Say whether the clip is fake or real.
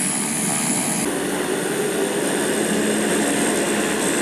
real